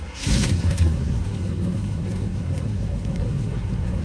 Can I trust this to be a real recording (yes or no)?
no